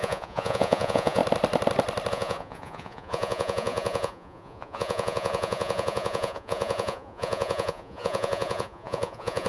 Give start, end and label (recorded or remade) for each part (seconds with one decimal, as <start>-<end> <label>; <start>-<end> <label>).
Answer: 0.0-1.2 remade; 1.2-2.1 recorded; 2.1-9.5 remade